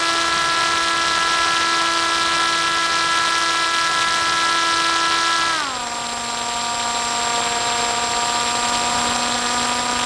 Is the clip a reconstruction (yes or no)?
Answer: no